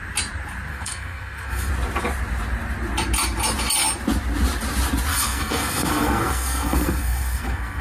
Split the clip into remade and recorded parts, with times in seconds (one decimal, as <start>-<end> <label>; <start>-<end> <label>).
0.0-0.7 recorded; 0.7-1.7 remade; 1.7-5.1 recorded; 5.1-7.8 remade